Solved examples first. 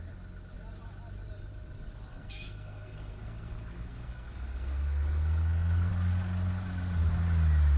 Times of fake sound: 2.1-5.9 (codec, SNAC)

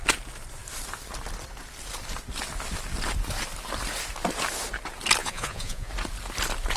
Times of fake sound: 5.2-5.9 (vocoder, Vocos)

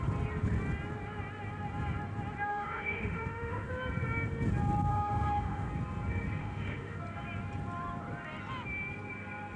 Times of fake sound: 2.5-3.7 (autoencoder, DAC-VAE); 4.9-5.7; 6.4-7.0

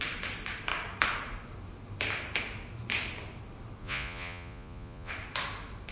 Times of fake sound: 3.8-5.1 (vocoder, Vocos)

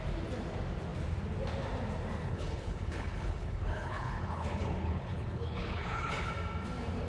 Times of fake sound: 2.2-6.3 (codec, HILCodec)

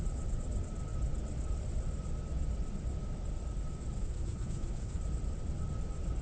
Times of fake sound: 4.0-5.0 (autoencoder, DAC-VAE)

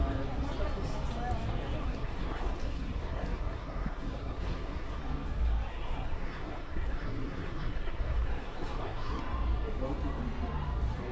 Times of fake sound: 1.8-5.0 (codec, SNAC); 5.7-9.2

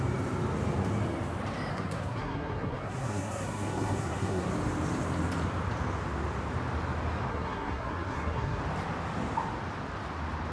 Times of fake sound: 1.7-4.5 (codec, SNAC); 7.3-8.6